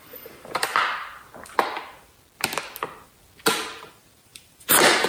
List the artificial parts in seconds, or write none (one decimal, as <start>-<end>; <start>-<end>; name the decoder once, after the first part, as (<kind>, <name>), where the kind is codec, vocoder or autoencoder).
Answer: 0.0-0.7 (vocoder, BigVGAN v2); 3.8-5.1